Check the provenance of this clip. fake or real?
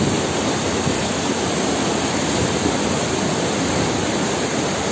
real